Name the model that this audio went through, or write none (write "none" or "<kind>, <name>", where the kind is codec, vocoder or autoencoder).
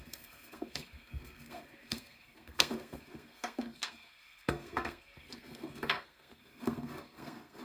codec, SNAC